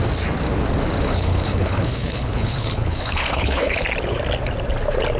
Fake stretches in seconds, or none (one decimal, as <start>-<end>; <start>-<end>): 1.0-3.8